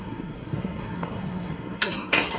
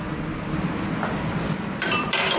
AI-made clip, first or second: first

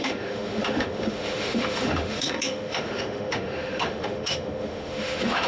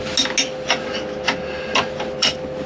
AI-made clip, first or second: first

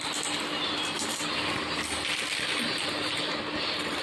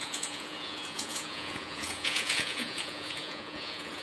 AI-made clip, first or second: second